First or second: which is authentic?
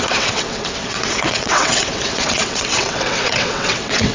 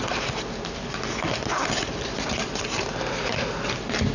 second